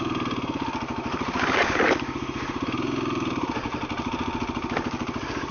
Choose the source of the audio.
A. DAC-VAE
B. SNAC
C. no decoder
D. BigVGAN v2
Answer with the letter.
C